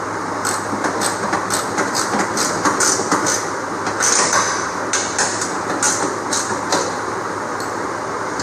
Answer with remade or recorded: remade